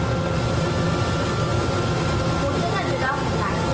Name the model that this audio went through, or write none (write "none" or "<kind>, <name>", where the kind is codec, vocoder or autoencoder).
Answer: none